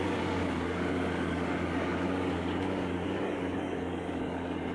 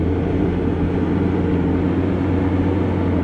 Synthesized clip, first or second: first